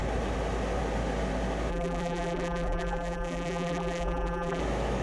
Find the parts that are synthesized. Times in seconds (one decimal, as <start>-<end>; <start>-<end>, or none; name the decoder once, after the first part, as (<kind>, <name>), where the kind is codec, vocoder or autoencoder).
1.7-4.6 (vocoder, BigVGAN v2)